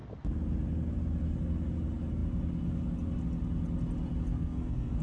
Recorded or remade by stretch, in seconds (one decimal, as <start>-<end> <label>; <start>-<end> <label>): 0.0-4.3 recorded; 4.3-5.0 remade